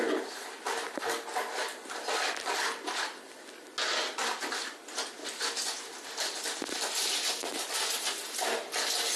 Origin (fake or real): real